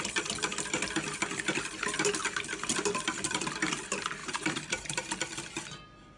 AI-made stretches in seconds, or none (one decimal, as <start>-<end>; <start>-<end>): 4.2-5.1